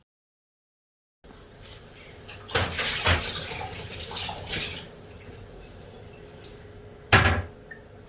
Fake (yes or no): no